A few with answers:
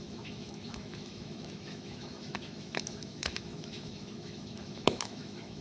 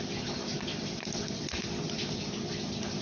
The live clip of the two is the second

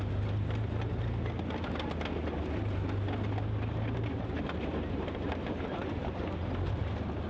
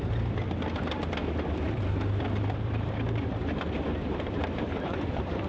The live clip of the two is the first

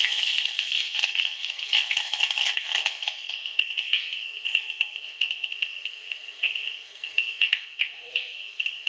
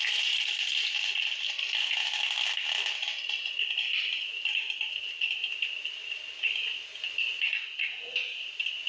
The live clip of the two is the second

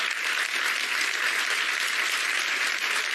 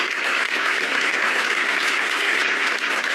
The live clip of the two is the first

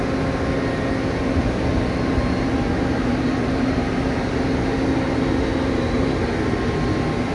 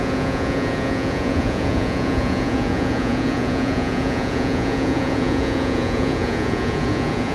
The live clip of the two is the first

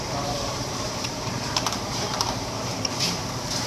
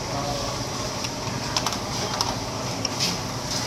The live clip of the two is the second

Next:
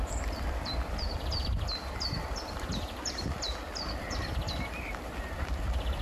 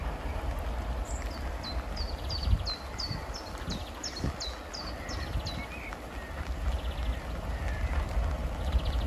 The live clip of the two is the second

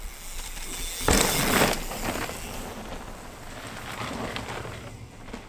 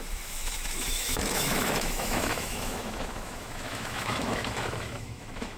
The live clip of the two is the first